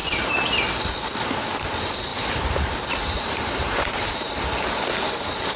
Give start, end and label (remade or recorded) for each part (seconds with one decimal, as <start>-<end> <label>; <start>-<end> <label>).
0.0-2.1 recorded; 2.1-4.4 remade; 4.4-5.6 recorded